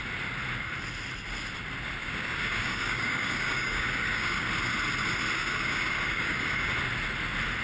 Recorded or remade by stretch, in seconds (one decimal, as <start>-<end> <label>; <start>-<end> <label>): 0.0-2.0 recorded; 2.0-4.5 remade; 4.5-5.4 recorded; 5.4-6.7 remade; 6.7-7.6 recorded